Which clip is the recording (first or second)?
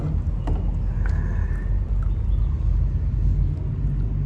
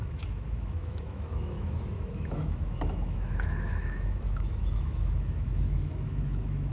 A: first